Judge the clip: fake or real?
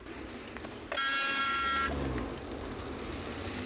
real